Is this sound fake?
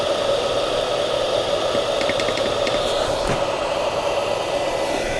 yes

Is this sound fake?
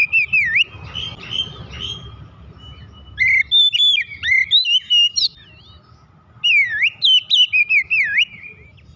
no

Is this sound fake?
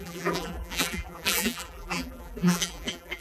yes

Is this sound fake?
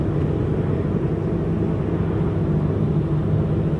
no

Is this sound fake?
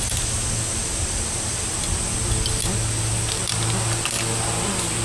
no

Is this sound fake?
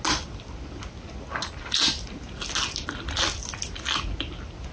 no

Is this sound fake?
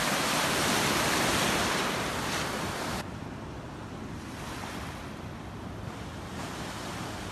no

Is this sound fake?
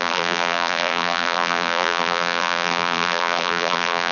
yes